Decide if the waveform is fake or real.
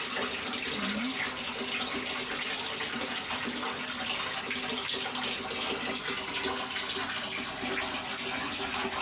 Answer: real